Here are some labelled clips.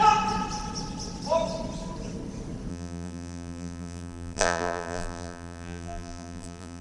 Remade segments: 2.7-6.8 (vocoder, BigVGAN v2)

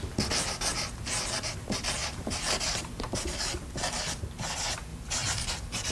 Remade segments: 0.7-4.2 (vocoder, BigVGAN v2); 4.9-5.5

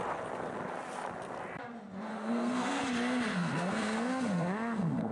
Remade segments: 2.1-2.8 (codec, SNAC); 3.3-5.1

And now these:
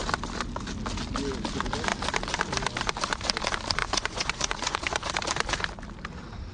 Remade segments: 3.8-4.8 (vocoder, Vocos)

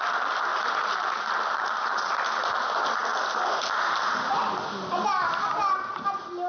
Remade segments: 0.5-2.2 (vocoder, BigVGAN v2)